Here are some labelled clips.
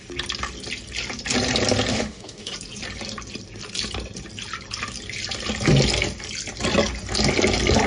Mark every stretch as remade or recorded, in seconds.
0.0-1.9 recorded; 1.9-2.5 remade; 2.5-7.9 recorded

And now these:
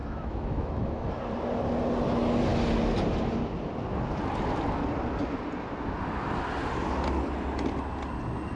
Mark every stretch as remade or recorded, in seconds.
0.0-1.1 remade; 1.1-8.6 recorded